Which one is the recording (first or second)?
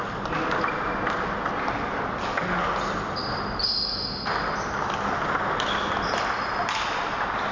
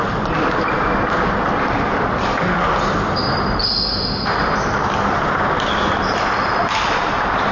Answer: first